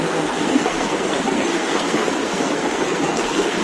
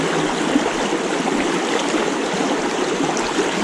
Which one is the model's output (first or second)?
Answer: first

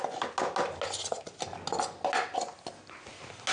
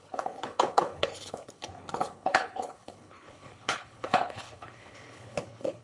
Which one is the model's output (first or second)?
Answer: second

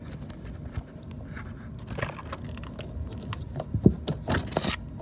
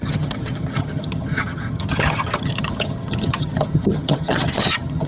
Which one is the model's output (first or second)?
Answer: second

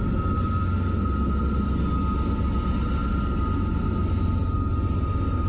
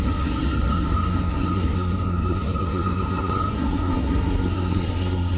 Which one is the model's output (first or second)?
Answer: second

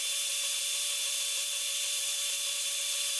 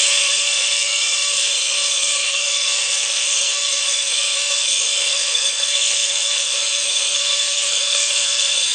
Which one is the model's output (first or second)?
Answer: second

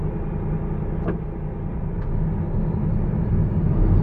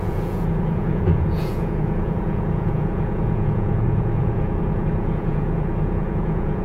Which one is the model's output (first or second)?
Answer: second